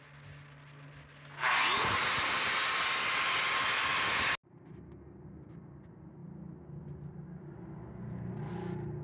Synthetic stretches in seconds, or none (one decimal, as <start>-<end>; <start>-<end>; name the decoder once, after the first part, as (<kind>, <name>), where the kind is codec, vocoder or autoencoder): none